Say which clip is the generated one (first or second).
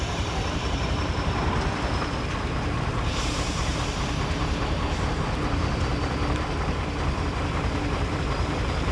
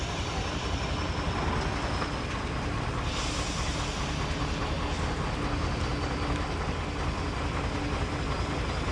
first